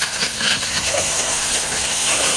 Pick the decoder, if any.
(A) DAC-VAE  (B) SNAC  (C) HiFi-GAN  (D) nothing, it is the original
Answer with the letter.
B